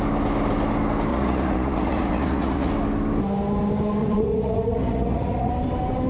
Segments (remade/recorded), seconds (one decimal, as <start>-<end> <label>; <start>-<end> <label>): 0.0-1.1 recorded; 1.1-2.7 remade; 2.7-4.0 recorded; 4.0-5.5 remade; 5.5-6.1 recorded

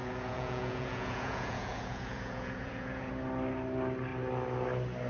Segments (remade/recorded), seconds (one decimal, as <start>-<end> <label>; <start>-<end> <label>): 0.0-3.1 remade; 3.1-5.1 recorded

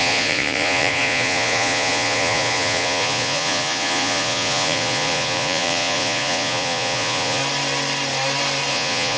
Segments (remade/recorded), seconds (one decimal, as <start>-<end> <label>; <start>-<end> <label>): 0.0-7.4 remade; 7.4-8.7 recorded; 8.7-9.2 remade

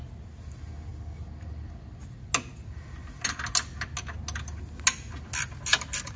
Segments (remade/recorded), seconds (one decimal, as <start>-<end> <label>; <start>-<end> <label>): 0.0-6.2 recorded

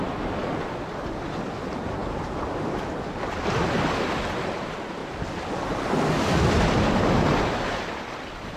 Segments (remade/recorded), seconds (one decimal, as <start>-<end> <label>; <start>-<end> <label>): 0.0-8.6 recorded

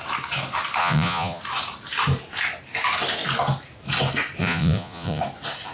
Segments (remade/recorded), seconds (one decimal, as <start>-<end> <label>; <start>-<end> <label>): 0.0-0.8 recorded; 0.8-1.4 remade; 1.4-4.4 recorded; 4.4-5.2 remade; 5.2-5.7 recorded

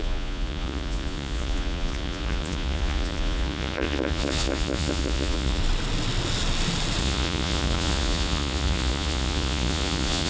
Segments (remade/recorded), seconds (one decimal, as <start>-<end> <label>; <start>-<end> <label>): 0.0-5.6 remade; 5.6-7.0 recorded; 7.0-10.3 remade

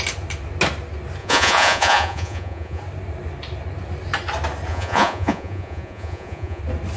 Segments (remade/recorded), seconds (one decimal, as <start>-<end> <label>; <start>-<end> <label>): 0.0-1.2 recorded; 1.2-2.8 remade; 2.8-4.7 recorded; 4.7-6.6 remade; 6.6-7.0 recorded